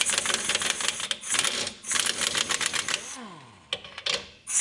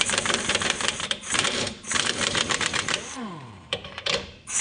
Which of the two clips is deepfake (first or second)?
second